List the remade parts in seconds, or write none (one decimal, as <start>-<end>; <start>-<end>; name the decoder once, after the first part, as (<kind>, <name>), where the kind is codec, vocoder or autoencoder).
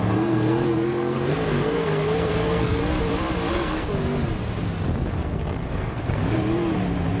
0.0-2.8 (codec, SNAC); 3.5-3.9; 5.1-6.2